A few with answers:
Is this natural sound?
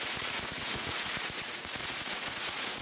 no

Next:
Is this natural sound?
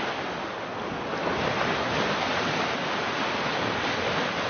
yes